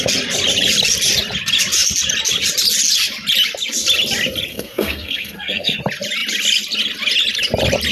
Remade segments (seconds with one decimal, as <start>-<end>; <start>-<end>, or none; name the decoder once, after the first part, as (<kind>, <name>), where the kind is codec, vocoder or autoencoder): 4.5-5.8 (codec, SNAC)